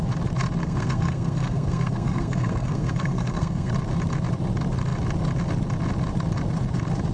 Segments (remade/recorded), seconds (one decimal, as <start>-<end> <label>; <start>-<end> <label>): 0.0-0.6 recorded; 0.6-3.7 remade; 3.7-7.1 recorded

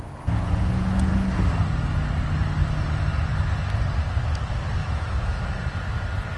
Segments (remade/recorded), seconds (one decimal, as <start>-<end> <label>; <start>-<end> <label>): 0.0-4.8 recorded; 4.8-5.4 remade; 5.4-6.4 recorded